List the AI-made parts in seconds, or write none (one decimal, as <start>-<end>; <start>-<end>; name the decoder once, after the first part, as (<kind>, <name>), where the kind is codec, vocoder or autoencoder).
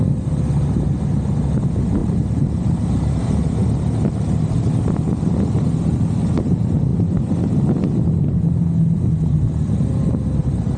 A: 2.0-3.2 (vocoder, BigVGAN v2)